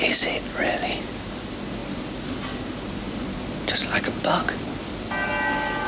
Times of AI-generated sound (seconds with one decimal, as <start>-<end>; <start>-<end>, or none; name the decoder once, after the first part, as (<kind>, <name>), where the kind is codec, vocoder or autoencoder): none